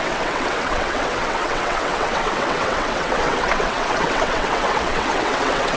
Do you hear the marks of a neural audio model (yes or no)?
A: yes